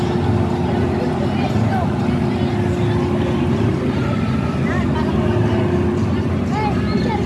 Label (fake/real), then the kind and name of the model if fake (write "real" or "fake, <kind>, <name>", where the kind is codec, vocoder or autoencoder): real